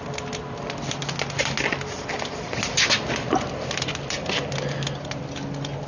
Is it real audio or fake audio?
real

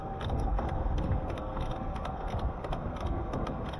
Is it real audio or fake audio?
fake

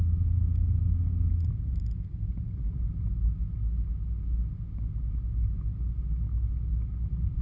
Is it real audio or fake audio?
real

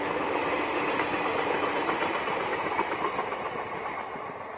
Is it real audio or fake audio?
real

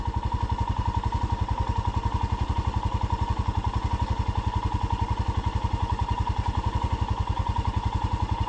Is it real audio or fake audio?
real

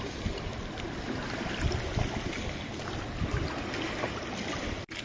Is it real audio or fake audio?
real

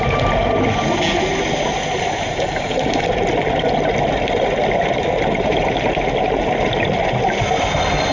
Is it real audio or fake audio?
real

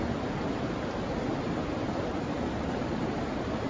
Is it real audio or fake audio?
real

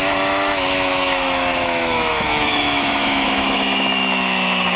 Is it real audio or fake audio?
fake